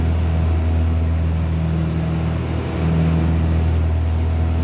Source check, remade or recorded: recorded